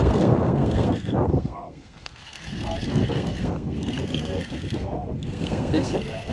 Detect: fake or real fake